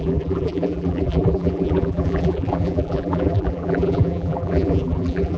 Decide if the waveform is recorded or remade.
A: remade